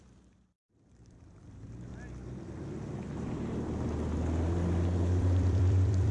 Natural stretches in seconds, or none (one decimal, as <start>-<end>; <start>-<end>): 1.9-5.2